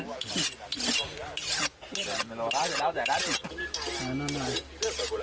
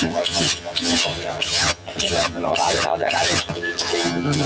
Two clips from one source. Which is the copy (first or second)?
second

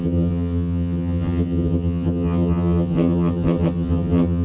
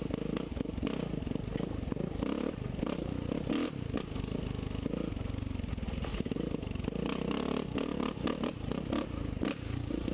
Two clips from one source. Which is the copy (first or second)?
first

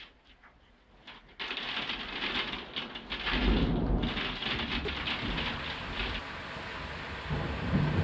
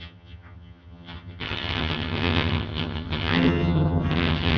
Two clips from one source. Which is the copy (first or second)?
second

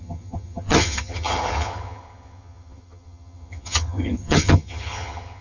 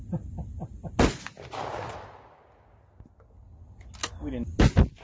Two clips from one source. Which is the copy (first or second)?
first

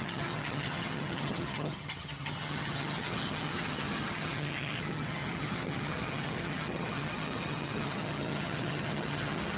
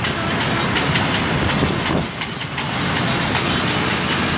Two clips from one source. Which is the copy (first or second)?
first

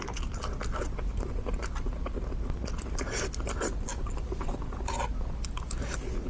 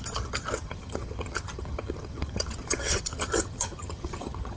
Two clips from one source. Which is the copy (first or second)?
second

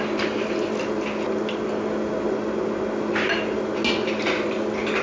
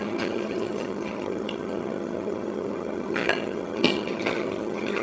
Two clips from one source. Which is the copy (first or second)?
second